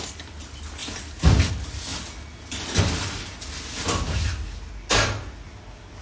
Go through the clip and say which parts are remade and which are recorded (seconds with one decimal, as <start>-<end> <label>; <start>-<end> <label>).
0.0-6.0 recorded